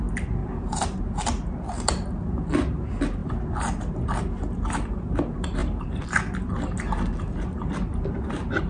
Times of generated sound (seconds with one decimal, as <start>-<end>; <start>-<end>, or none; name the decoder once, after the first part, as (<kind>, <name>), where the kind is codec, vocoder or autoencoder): 0.4-1.0 (vocoder, BigVGAN v2); 5.6-6.5